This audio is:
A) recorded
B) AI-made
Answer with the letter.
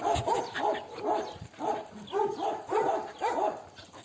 A